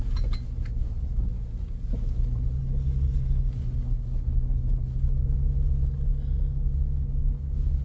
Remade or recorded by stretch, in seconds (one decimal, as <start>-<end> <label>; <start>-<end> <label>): 0.0-2.6 recorded; 2.6-3.5 remade; 3.5-7.8 recorded